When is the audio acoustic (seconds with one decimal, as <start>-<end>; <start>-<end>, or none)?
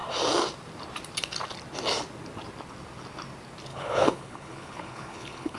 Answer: 0.0-3.7